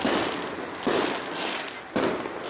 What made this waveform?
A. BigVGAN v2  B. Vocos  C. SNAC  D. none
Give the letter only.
D